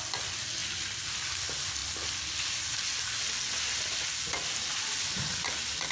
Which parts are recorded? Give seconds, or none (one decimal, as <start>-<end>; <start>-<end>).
0.0-5.9